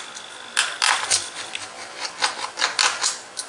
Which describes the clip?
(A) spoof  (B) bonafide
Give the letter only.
B